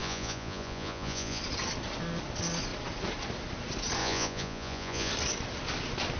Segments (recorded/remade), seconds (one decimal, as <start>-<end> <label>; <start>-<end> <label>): 0.0-1.4 remade; 1.4-4.0 recorded; 4.0-5.1 remade; 5.1-6.2 recorded